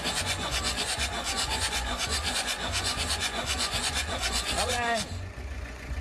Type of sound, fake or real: fake